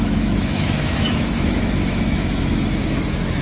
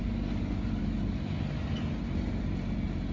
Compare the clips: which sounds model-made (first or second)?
first